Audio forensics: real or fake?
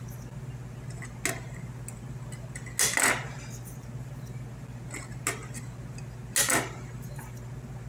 real